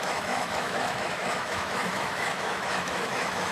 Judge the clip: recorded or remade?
remade